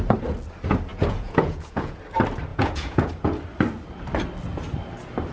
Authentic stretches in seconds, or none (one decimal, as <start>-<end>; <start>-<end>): 0.0-0.9; 2.0-2.5; 3.1-5.3